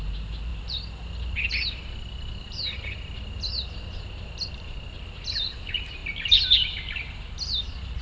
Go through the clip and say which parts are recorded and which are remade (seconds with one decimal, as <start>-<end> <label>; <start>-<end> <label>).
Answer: 0.0-8.0 recorded